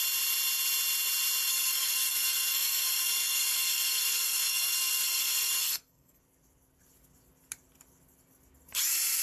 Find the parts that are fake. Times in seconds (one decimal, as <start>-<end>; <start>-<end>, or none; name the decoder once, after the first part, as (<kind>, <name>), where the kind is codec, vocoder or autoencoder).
1.5-6.2 (codec, SNAC)